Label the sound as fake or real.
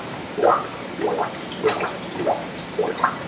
fake